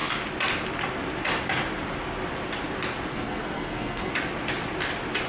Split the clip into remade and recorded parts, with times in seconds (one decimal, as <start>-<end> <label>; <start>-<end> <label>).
0.0-3.1 recorded; 3.1-4.1 remade; 4.1-5.3 recorded